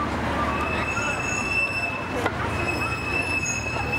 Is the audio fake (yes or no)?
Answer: no